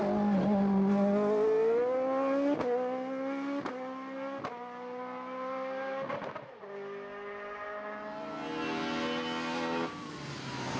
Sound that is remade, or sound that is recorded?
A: recorded